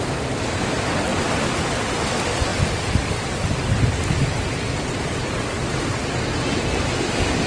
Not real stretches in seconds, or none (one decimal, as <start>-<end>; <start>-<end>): 0.0-2.5; 5.0-5.7; 7.0-7.5

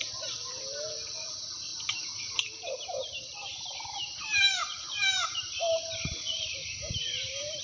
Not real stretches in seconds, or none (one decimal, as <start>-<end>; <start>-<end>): 1.7-5.5; 6.6-7.6

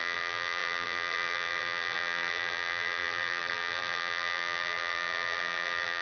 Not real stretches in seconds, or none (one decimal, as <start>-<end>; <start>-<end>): 0.0-6.0

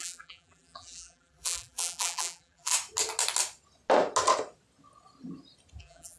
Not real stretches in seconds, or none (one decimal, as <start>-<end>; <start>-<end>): 0.0-2.7; 5.8-6.2

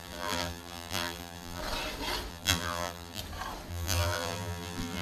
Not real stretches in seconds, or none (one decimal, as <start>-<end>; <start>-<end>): 0.0-1.6; 2.3-3.2; 3.7-5.0

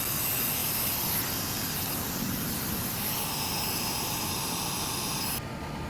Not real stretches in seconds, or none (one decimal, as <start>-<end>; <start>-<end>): none

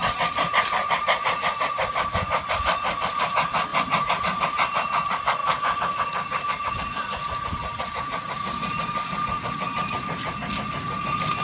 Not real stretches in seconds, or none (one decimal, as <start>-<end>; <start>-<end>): 3.7-4.2